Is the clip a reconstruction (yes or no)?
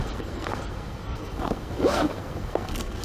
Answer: yes